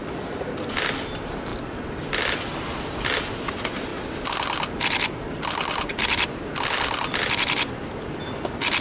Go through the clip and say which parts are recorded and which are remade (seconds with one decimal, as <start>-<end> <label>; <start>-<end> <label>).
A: 0.0-8.8 recorded